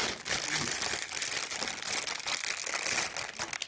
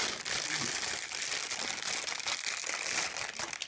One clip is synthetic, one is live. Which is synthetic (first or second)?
second